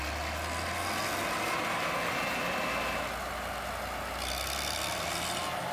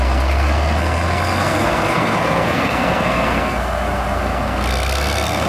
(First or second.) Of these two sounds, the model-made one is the second